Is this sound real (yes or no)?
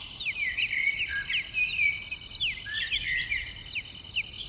yes